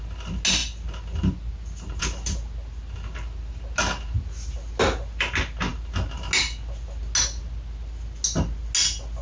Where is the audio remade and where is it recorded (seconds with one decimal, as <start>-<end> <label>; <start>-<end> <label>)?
0.0-9.2 recorded